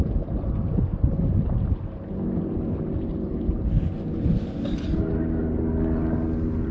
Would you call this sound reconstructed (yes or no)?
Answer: no